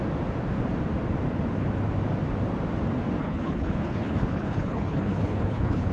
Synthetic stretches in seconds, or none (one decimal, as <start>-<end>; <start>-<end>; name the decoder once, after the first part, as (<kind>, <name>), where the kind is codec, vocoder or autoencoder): 3.2-5.9 (codec, HILCodec)